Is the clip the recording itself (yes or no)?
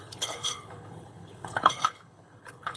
no